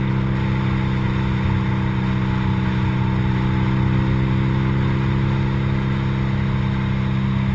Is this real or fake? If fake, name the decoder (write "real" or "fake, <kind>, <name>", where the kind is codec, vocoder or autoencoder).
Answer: real